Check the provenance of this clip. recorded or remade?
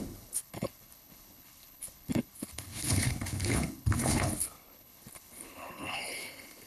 remade